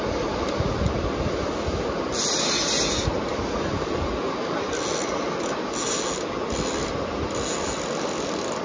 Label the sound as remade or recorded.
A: recorded